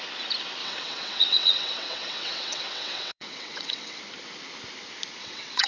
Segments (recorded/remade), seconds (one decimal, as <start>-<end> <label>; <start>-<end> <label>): 0.0-0.6 recorded; 0.6-4.0 remade; 4.0-5.2 recorded; 5.2-5.7 remade